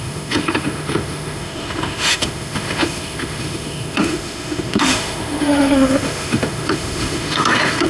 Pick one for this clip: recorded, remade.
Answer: remade